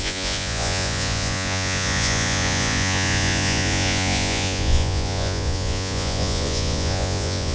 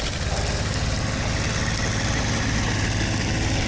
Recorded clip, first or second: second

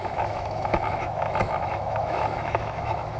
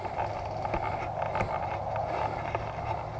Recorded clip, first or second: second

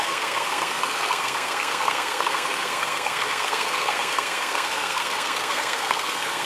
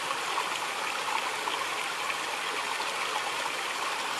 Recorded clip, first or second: second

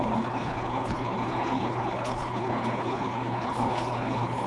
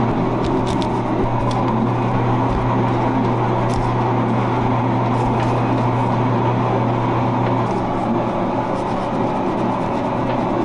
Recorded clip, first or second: second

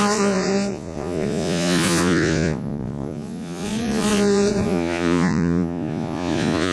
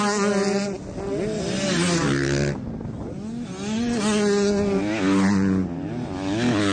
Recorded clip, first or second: second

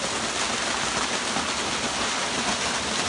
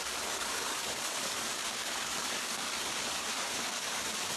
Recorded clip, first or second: first